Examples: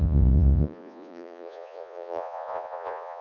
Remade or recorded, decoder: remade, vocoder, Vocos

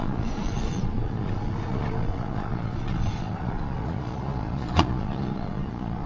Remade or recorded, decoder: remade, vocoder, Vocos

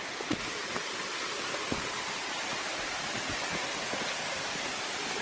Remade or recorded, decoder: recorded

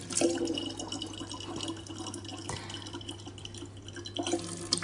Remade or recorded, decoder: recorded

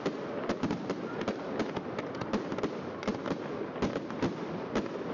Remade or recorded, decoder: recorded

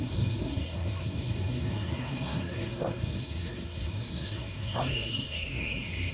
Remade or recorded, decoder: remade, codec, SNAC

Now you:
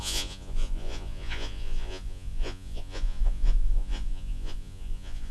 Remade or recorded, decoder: remade, vocoder, Vocos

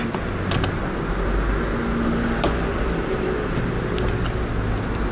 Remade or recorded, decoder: recorded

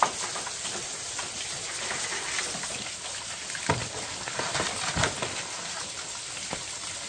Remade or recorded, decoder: recorded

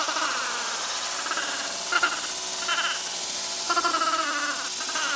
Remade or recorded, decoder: recorded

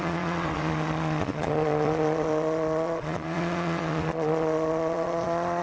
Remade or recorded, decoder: remade, vocoder, Vocos